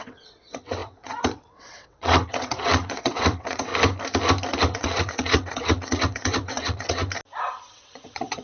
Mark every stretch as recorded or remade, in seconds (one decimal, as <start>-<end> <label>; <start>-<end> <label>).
0.0-3.7 remade; 3.7-4.6 recorded; 4.6-7.0 remade; 7.0-7.7 recorded; 7.7-8.4 remade